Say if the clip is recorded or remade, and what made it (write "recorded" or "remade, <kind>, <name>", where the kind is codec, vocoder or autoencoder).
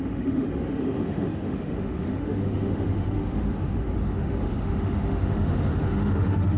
remade, autoencoder, DAC-VAE